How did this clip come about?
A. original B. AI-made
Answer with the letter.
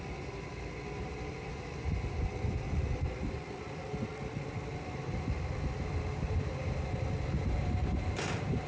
A